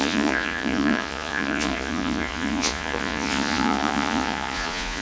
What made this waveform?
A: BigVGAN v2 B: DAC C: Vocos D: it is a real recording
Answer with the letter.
C